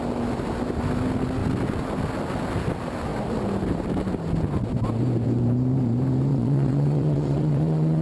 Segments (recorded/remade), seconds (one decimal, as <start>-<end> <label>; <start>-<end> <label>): 0.0-6.3 recorded; 6.3-8.0 remade